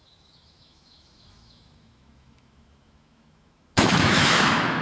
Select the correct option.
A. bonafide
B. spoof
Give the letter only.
B